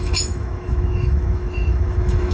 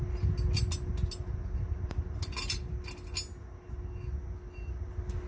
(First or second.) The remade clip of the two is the first